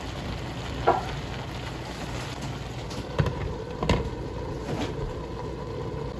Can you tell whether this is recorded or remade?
recorded